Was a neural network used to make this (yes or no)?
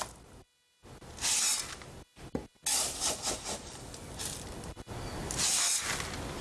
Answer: no